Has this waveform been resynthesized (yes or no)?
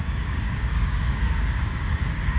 yes